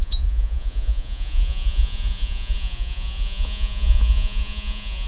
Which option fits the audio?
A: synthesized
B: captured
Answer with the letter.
A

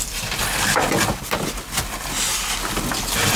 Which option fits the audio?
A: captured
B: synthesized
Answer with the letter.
A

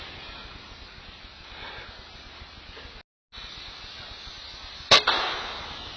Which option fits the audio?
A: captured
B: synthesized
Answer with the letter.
A